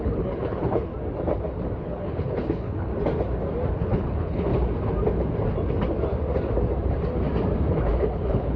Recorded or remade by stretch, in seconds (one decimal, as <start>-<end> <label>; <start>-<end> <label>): 0.0-0.9 remade; 0.9-1.8 recorded; 1.8-2.9 remade; 2.9-3.7 recorded; 3.7-4.5 remade; 4.5-7.7 recorded; 7.7-8.6 remade